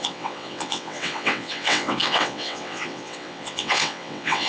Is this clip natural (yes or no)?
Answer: no